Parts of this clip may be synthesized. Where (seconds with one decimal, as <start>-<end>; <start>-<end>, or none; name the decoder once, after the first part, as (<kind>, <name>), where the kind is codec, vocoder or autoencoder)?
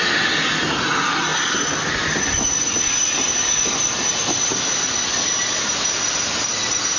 none